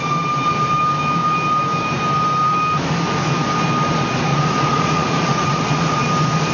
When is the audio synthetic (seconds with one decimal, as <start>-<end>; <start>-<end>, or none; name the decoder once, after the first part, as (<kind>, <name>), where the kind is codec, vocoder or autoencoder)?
4.3-6.1 (vocoder, Vocos)